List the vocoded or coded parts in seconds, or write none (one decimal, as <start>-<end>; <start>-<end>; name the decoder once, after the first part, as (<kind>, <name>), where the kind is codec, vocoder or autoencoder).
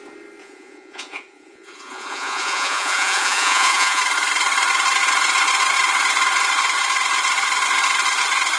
0.4-4.0 (vocoder, Vocos)